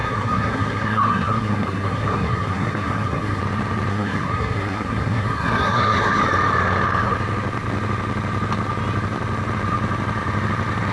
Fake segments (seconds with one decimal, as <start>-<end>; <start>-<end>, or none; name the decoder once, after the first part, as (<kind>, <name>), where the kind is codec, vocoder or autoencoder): 0.0-3.4 (codec, SNAC); 3.9-6.2